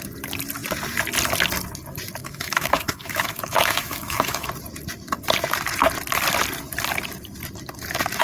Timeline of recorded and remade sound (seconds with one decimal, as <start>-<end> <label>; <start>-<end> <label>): 0.0-2.2 recorded; 2.2-4.5 remade; 4.5-8.2 recorded